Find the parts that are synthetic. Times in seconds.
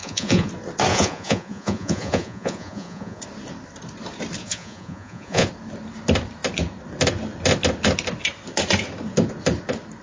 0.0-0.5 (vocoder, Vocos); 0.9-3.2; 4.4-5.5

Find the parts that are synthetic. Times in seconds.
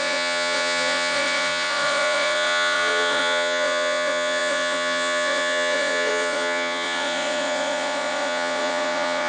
0.0-9.3 (vocoder, Vocos)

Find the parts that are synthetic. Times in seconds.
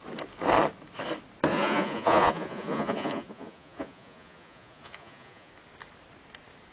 1.5-5.5 (vocoder, Vocos)